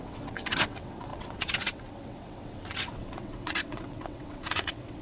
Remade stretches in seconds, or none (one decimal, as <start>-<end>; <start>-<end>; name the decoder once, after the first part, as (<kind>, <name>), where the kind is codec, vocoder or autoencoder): 0.0-5.0 (vocoder, WaveNeXt)